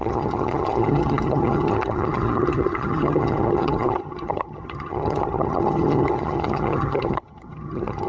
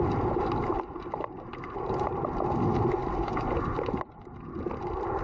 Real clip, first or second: second